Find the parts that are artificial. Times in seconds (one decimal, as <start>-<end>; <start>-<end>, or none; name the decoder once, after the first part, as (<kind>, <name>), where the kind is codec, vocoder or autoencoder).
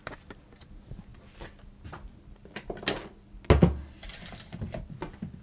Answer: none